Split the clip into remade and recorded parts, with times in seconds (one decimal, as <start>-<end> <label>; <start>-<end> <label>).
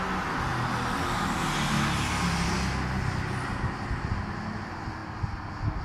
0.0-5.8 recorded